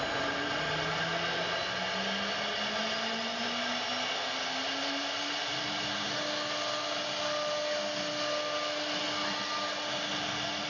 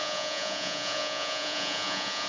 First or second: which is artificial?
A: second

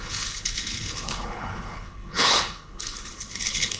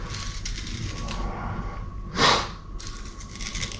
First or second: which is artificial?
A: first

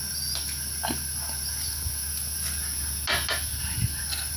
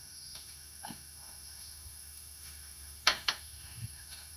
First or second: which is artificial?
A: second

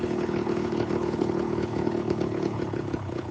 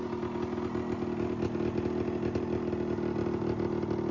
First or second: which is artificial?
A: first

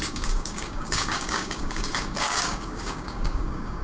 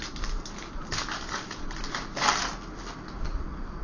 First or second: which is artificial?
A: first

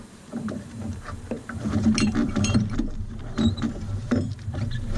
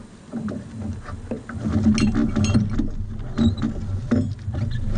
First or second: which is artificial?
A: first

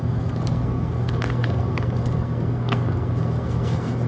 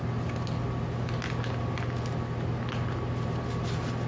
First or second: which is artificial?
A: first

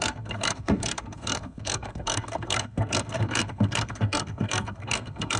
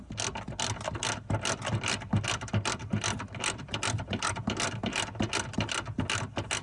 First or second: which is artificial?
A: first